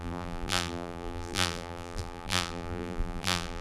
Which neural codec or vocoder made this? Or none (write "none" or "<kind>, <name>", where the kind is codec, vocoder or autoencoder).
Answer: vocoder, BigVGAN v2